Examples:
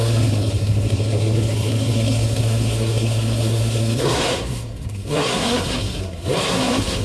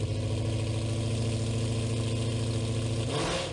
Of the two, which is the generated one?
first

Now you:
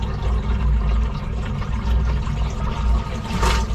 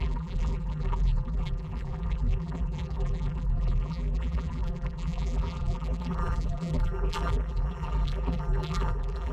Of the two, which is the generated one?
second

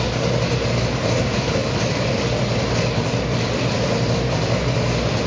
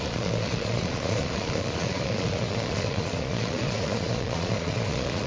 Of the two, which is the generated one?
second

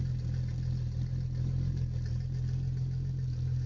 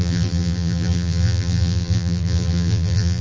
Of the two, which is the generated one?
second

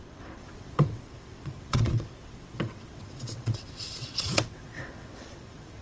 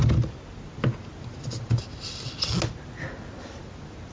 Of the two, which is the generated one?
first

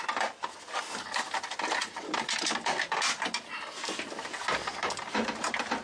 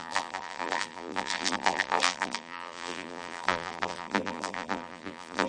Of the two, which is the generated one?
second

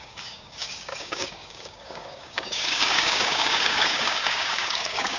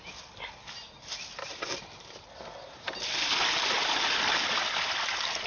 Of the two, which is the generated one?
first